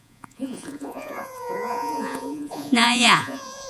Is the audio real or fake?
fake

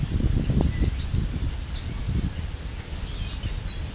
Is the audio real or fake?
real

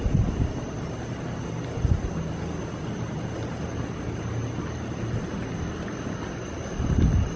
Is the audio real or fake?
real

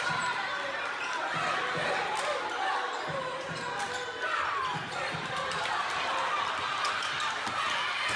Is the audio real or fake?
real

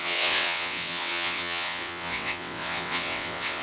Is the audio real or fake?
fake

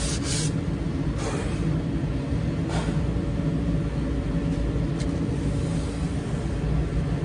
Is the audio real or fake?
real